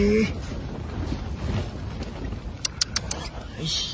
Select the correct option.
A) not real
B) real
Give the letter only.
B